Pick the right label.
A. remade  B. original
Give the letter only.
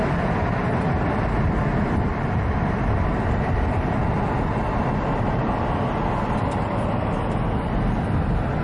B